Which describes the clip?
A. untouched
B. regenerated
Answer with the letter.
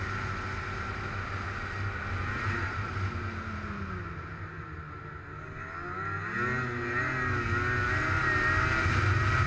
A